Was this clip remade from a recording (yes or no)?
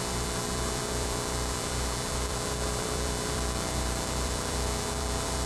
yes